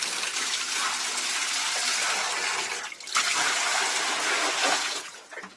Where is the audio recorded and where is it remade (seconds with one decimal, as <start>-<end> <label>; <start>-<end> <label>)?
0.0-4.6 recorded; 4.6-5.6 remade